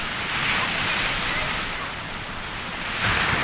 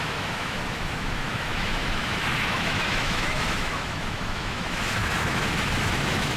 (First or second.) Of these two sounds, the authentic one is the first